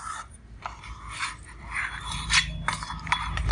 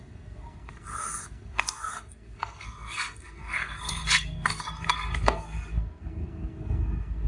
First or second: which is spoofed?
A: second